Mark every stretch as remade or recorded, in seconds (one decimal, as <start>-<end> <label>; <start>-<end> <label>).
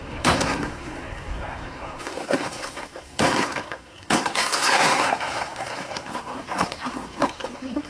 0.0-7.9 remade